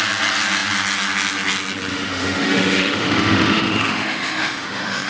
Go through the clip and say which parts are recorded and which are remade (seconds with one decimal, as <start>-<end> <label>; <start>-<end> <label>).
0.0-1.9 recorded; 1.9-5.1 remade